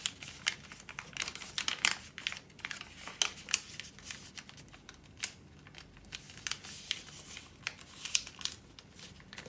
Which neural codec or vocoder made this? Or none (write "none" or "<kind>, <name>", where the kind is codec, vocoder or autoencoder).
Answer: none